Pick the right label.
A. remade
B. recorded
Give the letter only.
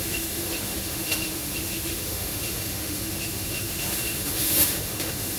A